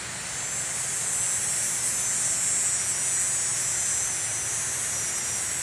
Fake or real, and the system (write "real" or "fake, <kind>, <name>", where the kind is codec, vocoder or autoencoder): real